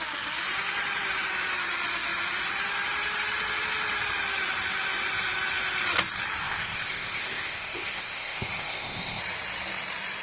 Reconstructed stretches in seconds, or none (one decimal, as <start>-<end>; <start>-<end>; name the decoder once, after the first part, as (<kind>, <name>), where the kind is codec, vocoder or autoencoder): 6.4-9.2 (codec, ZipCodec)